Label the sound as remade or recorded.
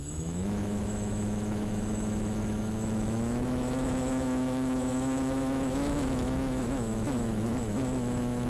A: remade